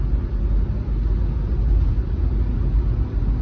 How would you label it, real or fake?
real